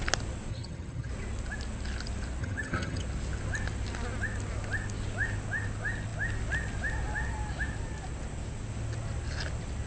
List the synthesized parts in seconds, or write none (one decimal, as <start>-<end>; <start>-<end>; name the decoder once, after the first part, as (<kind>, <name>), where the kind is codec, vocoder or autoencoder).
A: 0.5-1.1 (vocoder, HiFi-GAN); 2.4-3.0